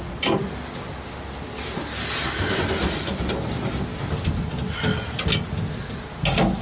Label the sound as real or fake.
real